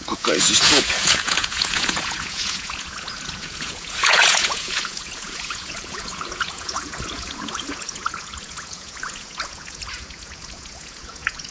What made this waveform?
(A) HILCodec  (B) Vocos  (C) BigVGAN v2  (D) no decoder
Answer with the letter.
B